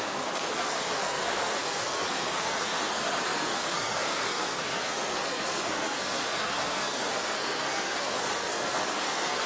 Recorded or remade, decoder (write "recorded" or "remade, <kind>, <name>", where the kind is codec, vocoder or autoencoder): remade, codec, SNAC